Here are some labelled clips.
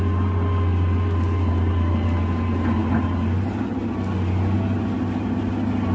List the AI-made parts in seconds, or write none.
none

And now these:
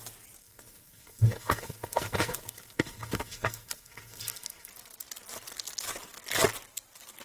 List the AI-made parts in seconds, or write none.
0.4-4.7 (codec, SNAC)